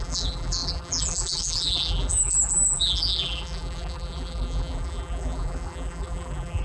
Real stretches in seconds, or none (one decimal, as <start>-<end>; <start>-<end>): none